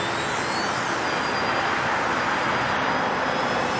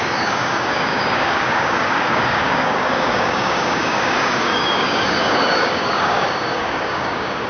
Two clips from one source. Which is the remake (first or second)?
second